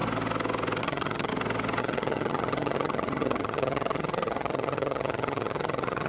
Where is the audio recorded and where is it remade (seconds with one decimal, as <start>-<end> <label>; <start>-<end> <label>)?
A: 0.0-0.8 recorded; 0.8-1.3 remade; 1.3-1.8 recorded; 1.8-6.1 remade